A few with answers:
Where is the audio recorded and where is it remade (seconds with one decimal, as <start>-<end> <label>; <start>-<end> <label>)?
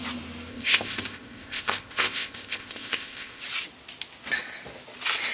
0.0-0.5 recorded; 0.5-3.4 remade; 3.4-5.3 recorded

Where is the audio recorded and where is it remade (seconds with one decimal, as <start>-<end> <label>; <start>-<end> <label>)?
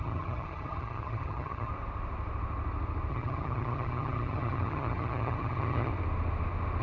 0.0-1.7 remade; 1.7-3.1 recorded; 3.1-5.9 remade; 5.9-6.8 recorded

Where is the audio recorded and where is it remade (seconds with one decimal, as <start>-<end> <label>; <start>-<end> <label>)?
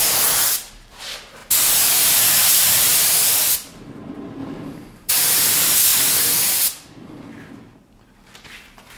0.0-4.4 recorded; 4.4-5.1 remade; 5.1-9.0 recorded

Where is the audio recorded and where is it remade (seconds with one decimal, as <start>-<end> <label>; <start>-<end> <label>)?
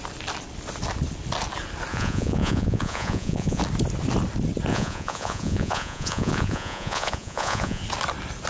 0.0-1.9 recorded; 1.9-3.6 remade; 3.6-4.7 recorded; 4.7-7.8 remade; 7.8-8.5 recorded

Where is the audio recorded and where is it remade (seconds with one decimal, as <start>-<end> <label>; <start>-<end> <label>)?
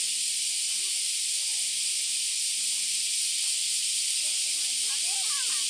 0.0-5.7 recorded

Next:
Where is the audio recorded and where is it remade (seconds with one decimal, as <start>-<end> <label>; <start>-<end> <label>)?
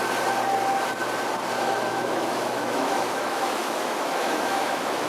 0.0-1.9 recorded; 1.9-5.1 remade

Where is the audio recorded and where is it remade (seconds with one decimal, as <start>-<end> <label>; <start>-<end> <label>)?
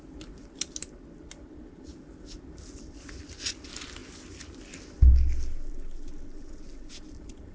0.0-7.5 recorded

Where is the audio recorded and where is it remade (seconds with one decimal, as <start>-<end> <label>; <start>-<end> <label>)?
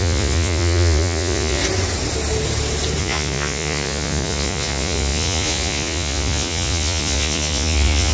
0.0-1.6 remade; 1.6-3.0 recorded; 3.0-8.1 remade